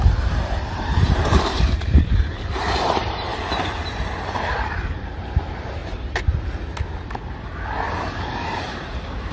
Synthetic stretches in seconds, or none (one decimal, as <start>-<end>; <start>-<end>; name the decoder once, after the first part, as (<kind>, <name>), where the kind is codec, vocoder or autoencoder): 0.0-3.3 (vocoder, BigVGAN v2); 4.5-5.8; 8.7-9.3